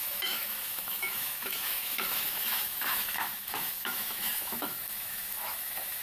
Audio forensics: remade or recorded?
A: remade